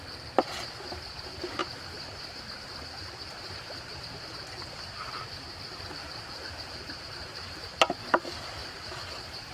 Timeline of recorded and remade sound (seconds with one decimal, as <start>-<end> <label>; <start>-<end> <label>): 0.0-1.6 recorded; 1.6-5.1 remade; 5.1-6.0 recorded; 6.0-7.6 remade; 7.6-8.6 recorded; 8.6-9.5 remade

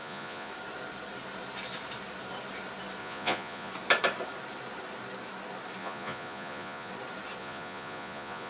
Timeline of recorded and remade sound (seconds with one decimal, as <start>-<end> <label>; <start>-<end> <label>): 0.0-0.5 remade; 0.5-3.0 recorded; 3.0-3.7 remade; 3.7-5.8 recorded; 5.8-6.9 remade; 6.9-7.4 recorded; 7.4-8.5 remade